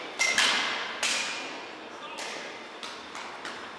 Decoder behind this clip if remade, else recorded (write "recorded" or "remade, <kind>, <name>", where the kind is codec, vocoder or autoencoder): recorded